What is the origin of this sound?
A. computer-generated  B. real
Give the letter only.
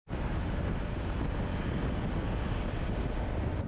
B